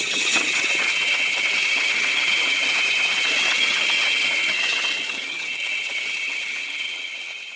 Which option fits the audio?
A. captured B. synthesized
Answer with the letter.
B